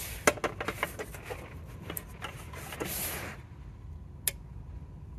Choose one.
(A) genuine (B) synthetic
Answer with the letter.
A